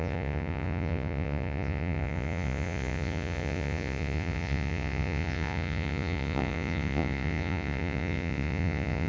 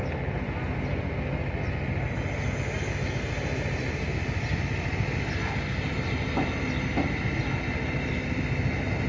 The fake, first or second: first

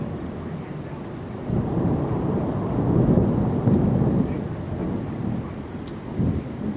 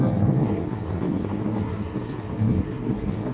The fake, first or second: second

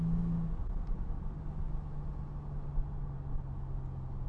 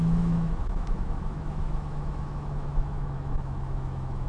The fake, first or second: second